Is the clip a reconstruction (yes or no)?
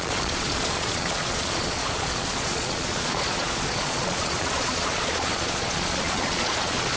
yes